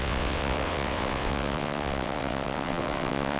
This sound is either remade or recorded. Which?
remade